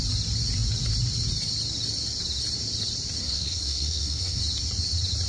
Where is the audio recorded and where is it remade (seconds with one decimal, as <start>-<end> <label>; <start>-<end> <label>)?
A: 0.0-3.2 recorded; 3.2-4.4 remade; 4.4-5.3 recorded